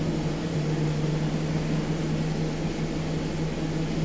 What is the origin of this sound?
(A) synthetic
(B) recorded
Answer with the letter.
B